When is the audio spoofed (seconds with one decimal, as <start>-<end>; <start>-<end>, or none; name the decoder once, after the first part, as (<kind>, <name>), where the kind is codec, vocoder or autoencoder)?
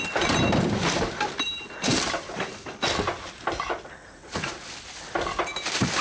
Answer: 4.0-4.5 (vocoder, Vocos)